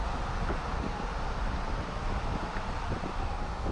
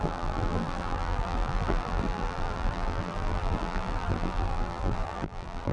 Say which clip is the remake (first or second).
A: second